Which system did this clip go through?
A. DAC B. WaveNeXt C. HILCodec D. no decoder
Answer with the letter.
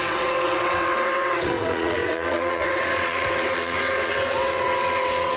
B